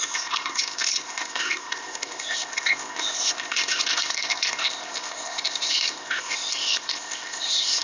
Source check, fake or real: fake